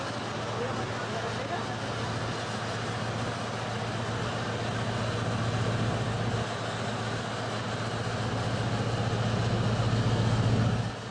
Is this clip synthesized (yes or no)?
no